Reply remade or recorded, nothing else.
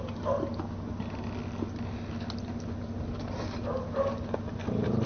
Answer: recorded